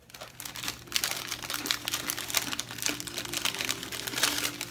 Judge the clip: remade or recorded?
recorded